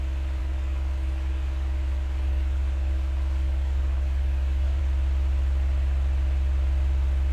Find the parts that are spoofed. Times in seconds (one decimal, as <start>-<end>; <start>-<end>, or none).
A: 0.4-4.8